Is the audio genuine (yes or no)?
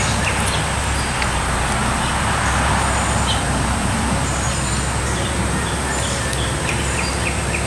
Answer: yes